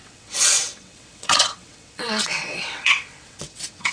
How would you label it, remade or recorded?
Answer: remade